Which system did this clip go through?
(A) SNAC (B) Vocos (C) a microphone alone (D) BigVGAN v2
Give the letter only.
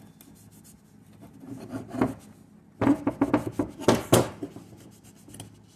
C